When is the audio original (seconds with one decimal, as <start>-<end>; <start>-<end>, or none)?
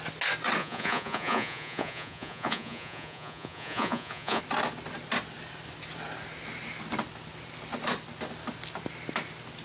0.0-0.6; 4.4-9.6